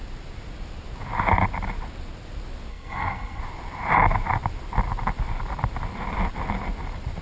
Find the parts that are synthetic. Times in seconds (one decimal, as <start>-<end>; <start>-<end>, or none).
2.7-3.4